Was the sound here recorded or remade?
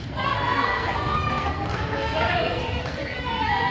remade